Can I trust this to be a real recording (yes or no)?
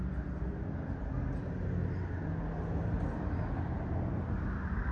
yes